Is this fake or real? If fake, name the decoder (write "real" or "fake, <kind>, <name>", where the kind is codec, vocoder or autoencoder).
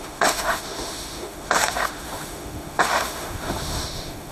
fake, autoencoder, DAC-VAE